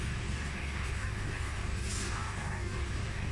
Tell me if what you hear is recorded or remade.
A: remade